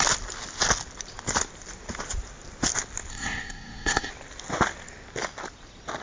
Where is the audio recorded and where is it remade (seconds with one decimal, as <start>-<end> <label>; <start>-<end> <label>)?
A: 0.0-3.1 recorded; 3.1-4.1 remade; 4.1-6.0 recorded